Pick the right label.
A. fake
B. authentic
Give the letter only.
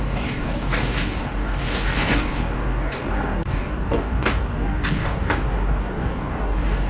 A